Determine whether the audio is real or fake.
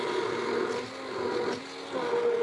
real